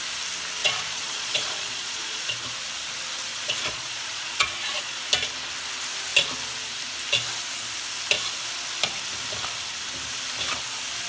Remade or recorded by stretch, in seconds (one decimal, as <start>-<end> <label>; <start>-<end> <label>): 0.0-0.6 recorded; 0.6-2.3 remade; 2.3-3.3 recorded; 3.3-5.1 remade; 5.1-11.1 recorded